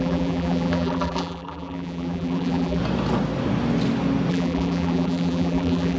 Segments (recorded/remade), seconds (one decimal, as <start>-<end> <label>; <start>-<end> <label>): 0.0-2.8 remade; 2.8-4.3 recorded; 4.3-6.0 remade